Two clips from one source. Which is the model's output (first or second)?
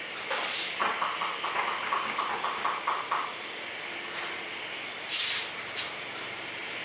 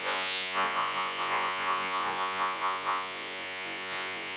second